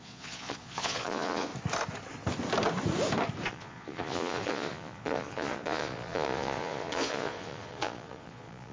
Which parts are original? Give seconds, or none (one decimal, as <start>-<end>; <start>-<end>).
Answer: 1.5-3.5